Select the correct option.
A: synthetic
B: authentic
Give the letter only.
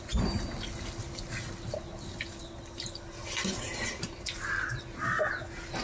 B